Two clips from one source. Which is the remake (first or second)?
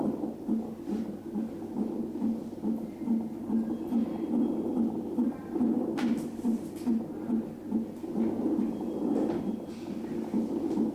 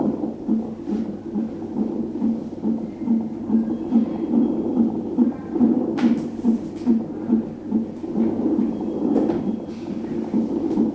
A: second